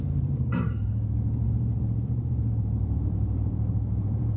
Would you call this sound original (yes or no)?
no